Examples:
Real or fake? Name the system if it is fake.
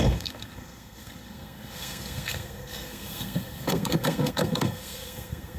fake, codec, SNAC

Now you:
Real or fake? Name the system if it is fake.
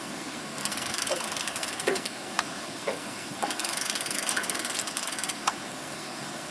fake, codec, SNAC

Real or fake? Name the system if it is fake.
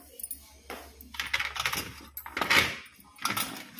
real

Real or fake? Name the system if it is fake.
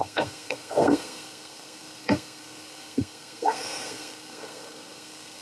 fake, codec, SNAC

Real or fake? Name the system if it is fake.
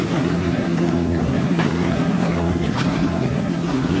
fake, codec, SNAC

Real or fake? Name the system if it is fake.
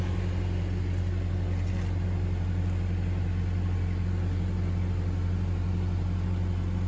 real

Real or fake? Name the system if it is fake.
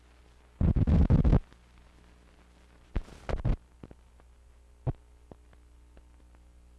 real